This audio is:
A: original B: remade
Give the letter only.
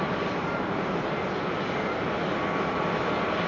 A